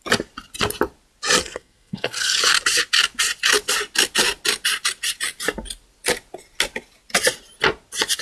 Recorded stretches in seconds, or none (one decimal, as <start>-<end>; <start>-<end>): 0.0-1.4; 2.4-8.2